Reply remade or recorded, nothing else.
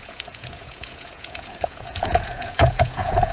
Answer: remade